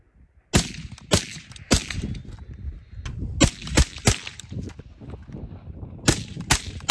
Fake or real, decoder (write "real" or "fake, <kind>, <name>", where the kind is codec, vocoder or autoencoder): real